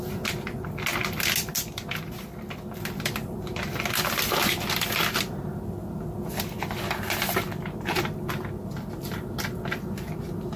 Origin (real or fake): real